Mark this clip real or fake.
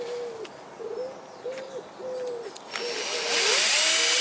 real